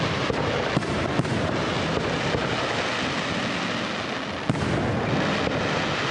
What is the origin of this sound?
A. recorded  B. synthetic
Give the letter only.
A